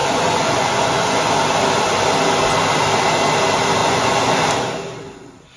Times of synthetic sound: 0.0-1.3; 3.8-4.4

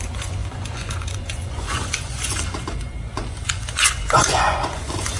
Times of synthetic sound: 0.0-5.2

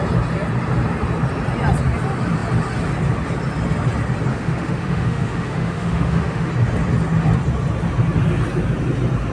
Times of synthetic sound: 4.3-6.5

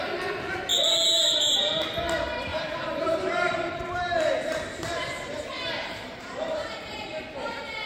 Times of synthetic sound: 2.5-7.2

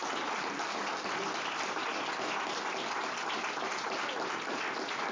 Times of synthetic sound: none

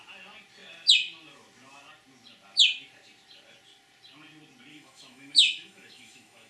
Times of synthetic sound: 4.7-6.5

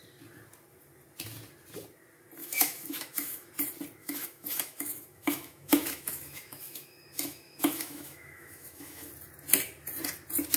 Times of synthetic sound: 2.4-3.5; 4.0-9.1

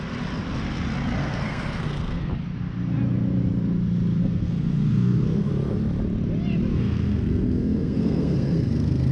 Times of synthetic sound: 1.2-2.3; 4.2-5.5; 6.7-9.1